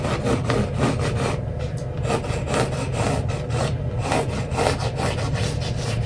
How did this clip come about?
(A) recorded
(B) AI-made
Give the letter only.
A